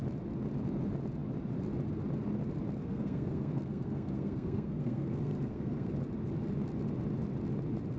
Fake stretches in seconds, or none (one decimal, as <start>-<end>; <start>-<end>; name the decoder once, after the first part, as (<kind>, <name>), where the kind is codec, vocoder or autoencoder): 2.8-5.9 (codec, SNAC)